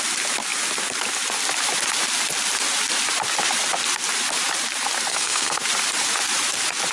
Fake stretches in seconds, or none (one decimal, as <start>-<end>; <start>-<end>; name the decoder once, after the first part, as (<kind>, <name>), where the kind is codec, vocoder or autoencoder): 5.1-5.6 (codec, SNAC)